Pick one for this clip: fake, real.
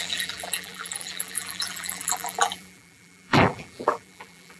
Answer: fake